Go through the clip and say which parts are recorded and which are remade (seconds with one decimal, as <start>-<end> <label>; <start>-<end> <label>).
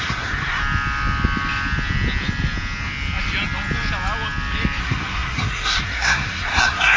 0.0-0.6 remade; 0.6-4.8 recorded; 4.8-7.0 remade